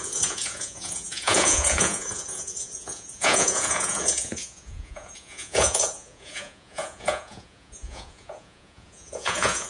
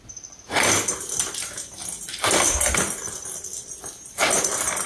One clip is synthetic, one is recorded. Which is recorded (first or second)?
second